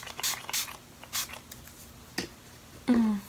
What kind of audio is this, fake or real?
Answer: real